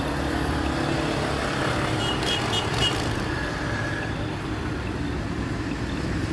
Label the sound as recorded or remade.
remade